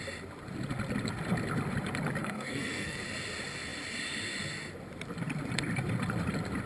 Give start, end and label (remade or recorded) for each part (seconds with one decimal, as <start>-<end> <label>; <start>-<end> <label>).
0.0-2.2 recorded; 2.2-3.0 remade; 3.0-6.7 recorded